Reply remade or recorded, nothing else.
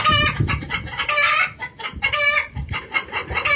remade